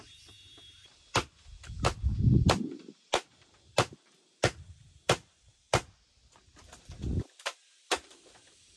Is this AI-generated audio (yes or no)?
yes